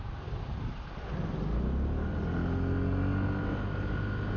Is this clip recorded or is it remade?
recorded